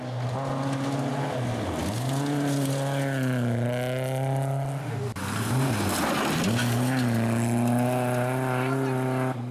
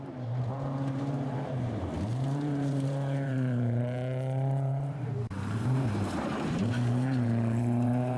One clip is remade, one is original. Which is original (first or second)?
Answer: first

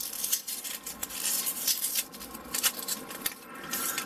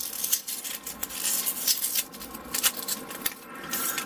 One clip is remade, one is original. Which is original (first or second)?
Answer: second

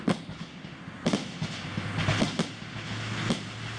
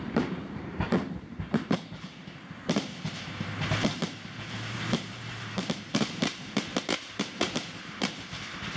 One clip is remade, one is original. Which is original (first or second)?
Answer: first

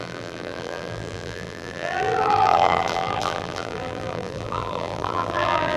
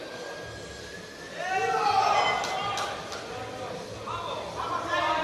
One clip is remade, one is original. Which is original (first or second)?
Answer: second